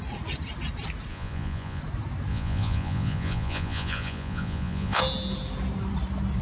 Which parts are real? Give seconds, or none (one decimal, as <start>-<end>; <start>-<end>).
0.0-1.1; 1.8-2.3; 5.0-6.4